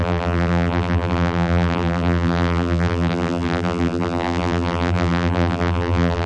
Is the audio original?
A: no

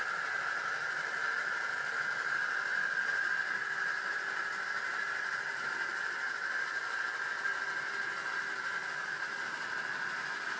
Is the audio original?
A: yes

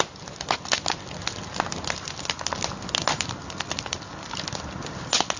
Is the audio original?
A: yes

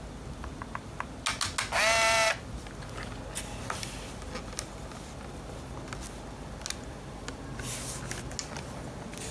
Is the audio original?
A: yes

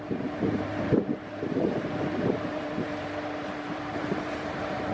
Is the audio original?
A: no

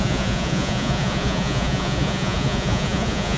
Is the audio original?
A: no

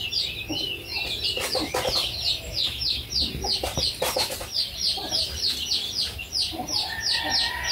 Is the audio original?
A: yes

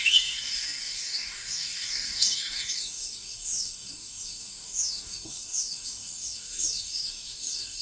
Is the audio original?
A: no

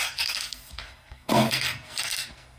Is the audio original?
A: no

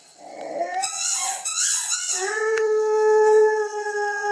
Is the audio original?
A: no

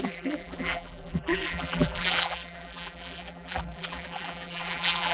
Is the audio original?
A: no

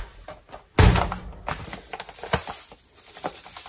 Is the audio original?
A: yes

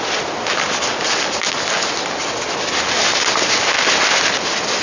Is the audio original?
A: yes